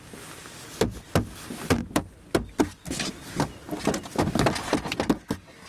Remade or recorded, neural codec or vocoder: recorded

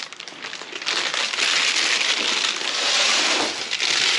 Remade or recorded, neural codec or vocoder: recorded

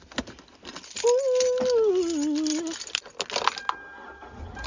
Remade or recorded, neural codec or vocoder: recorded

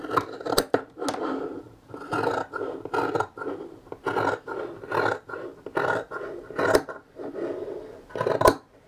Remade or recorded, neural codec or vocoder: recorded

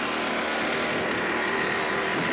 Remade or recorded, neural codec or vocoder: recorded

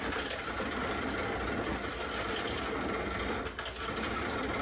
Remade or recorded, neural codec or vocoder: recorded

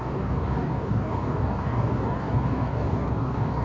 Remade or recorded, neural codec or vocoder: remade, codec, DAC